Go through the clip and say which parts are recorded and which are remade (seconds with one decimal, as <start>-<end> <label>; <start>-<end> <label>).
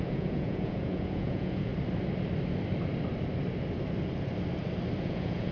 0.0-1.7 remade; 1.7-5.0 recorded; 5.0-5.5 remade